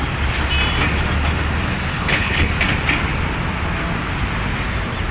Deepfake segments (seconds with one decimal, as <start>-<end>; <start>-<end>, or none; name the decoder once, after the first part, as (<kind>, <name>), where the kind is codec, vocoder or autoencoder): 1.9-2.5 (codec, HILCodec)